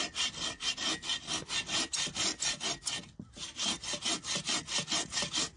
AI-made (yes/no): no